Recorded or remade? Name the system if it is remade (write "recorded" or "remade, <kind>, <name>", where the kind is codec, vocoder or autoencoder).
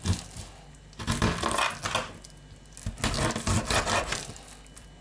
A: recorded